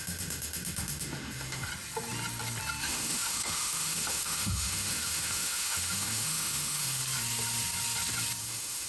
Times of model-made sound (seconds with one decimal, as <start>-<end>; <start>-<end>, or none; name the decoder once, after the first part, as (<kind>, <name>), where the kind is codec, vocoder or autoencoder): 0.0-1.7 (autoencoder, DAC-VAE); 2.8-7.0; 8.4-8.9